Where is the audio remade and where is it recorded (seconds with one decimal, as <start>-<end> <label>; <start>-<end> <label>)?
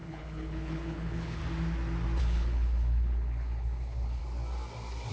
0.0-1.4 remade; 1.4-2.2 recorded; 2.2-4.2 remade; 4.2-5.1 recorded